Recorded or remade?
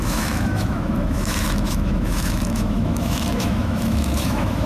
remade